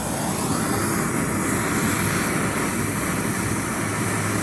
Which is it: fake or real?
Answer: real